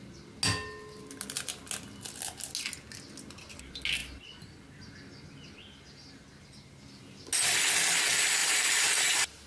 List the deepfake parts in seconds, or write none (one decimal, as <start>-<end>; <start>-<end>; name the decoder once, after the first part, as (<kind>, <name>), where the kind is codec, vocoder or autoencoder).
8.4-9.5 (vocoder, BigVGAN v2)